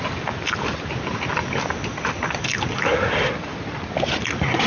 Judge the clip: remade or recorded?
recorded